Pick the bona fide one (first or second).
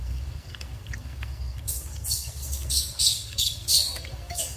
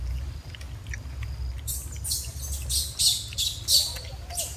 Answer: second